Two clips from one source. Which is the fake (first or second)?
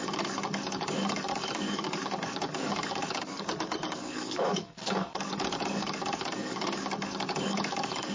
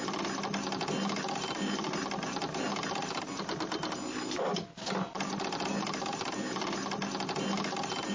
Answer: first